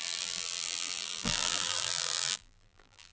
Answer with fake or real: fake